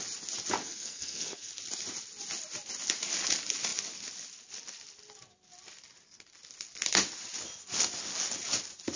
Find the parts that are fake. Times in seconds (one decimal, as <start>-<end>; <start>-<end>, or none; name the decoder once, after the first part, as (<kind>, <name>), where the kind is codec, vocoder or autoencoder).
0.6-1.5 (codec, SNAC)